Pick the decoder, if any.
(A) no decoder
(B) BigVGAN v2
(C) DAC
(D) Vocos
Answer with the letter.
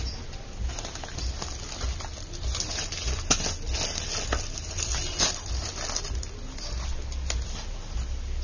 A